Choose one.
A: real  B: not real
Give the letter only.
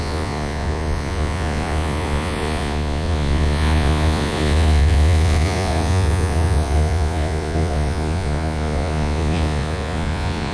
B